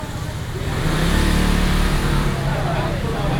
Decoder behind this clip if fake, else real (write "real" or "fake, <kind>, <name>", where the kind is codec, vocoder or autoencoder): real